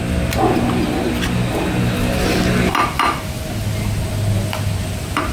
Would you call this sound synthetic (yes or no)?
no